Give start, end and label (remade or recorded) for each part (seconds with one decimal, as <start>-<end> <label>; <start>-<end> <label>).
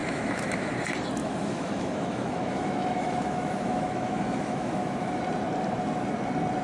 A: 0.0-0.7 remade; 0.7-1.2 recorded; 1.2-5.2 remade; 5.2-6.6 recorded